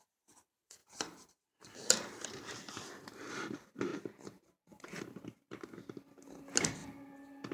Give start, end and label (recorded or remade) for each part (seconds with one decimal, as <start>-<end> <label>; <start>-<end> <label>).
0.0-0.8 recorded; 0.8-2.7 remade; 2.7-7.5 recorded